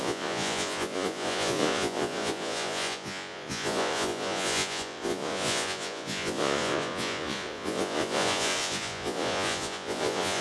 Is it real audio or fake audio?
fake